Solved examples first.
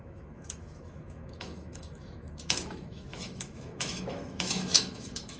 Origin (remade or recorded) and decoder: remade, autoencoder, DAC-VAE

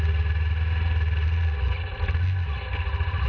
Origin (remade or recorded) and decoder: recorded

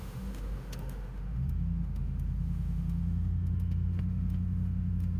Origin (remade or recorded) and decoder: remade, autoencoder, DAC-VAE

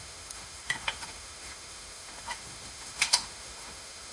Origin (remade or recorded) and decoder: remade, autoencoder, DAC-VAE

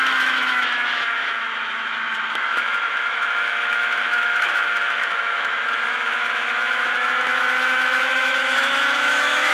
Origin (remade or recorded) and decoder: remade, autoencoder, DAC-VAE